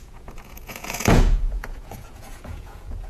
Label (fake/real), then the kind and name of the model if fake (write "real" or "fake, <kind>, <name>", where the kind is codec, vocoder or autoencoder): fake, vocoder, Vocos